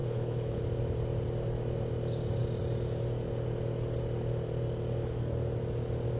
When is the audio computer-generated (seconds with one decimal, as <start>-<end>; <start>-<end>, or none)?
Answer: 0.0-0.6